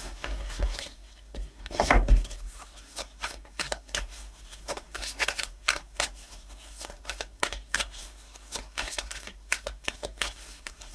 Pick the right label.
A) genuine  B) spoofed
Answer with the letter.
B